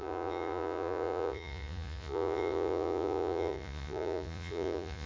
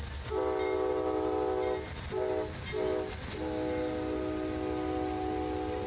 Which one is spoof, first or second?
first